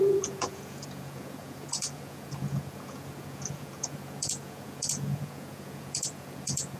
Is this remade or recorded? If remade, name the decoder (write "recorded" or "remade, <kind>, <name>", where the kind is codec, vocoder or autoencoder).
remade, vocoder, Vocos